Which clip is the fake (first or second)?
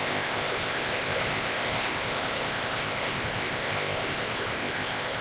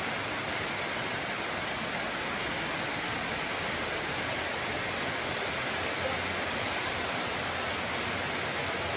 first